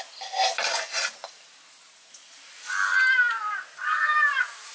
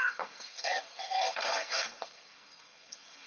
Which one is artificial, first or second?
second